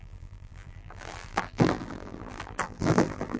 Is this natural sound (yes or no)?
no